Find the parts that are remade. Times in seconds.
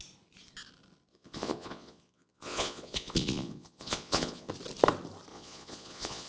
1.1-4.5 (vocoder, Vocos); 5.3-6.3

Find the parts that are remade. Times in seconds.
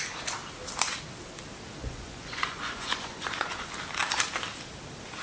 1.8-3.7 (vocoder, Vocos)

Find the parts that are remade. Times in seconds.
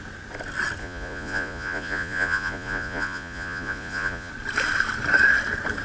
0.8-4.3 (vocoder, Vocos)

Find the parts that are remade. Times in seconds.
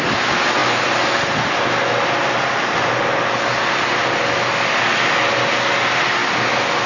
none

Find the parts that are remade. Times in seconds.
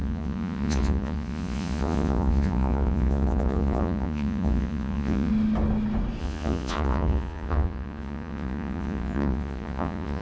0.0-5.3 (vocoder, Vocos); 6.2-10.2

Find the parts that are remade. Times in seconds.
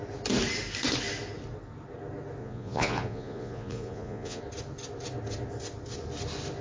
2.4-4.4 (vocoder, Vocos)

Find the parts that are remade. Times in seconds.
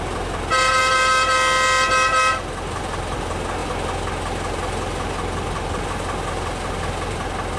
none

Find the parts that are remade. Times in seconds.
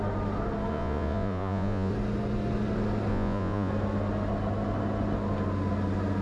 0.7-1.9 (vocoder, Vocos); 3.1-3.7